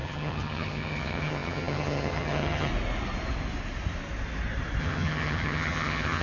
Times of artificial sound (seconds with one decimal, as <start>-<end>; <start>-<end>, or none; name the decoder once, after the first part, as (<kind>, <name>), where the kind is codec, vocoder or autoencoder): 0.0-2.7 (vocoder, HiFi-GAN); 4.8-6.2